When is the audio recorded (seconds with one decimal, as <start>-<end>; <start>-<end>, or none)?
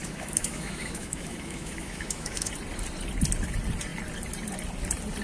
2.5-5.2